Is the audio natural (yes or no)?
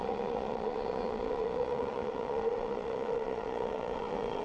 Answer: no